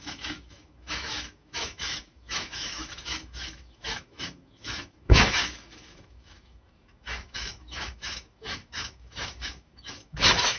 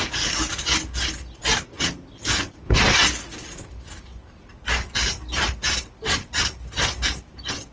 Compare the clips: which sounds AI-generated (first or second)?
first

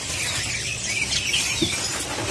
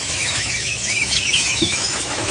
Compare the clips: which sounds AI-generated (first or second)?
second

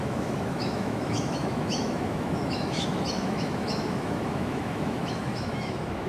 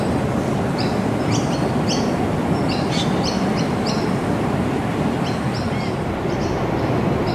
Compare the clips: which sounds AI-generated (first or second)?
first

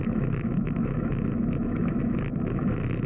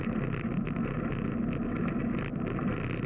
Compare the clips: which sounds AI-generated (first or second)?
first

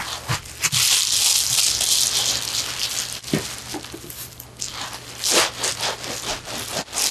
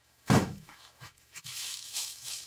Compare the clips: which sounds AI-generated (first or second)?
second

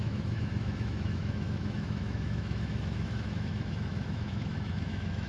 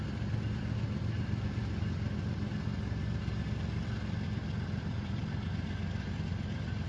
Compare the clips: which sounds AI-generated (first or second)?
first